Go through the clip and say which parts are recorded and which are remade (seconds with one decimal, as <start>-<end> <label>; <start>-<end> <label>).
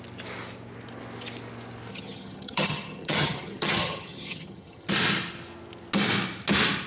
0.0-1.9 recorded; 1.9-4.9 remade; 4.9-6.9 recorded